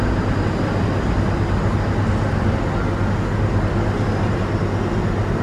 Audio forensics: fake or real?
real